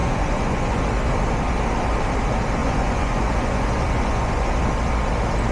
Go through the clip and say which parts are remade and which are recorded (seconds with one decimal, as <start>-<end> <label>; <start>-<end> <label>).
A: 0.0-0.8 remade; 0.8-2.6 recorded; 2.6-4.5 remade; 4.5-5.5 recorded